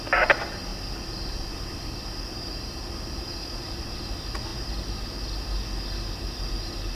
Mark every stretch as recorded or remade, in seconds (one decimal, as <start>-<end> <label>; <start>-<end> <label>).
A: 0.0-6.9 recorded